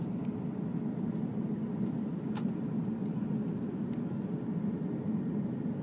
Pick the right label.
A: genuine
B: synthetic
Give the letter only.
A